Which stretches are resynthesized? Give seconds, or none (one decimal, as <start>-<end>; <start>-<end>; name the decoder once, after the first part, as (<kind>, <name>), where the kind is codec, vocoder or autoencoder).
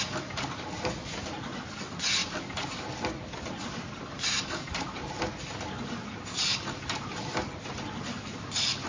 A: none